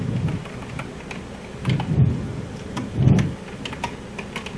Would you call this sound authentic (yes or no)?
yes